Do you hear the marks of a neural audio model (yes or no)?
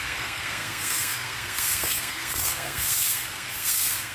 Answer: yes